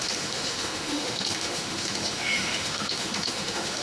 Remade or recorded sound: remade